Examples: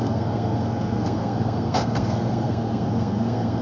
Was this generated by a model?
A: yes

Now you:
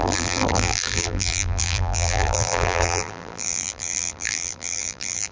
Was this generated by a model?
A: yes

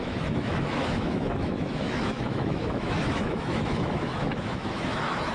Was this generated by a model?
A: yes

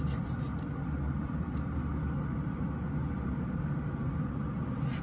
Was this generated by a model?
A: no